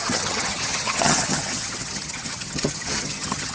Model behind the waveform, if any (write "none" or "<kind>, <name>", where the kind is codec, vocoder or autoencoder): vocoder, HiFi-GAN